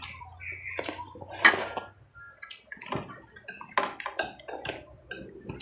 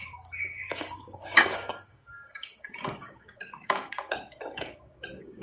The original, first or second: first